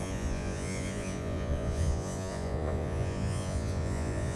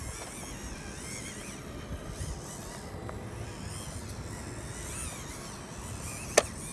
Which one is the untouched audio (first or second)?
second